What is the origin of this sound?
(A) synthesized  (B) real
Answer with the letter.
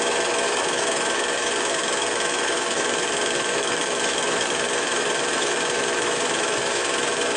A